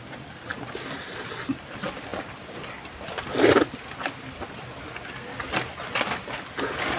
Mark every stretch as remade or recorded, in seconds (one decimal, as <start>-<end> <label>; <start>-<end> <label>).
0.0-0.5 recorded; 0.5-1.3 remade; 1.3-7.0 recorded